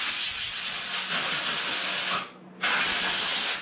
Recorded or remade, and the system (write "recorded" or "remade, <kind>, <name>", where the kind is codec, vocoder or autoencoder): recorded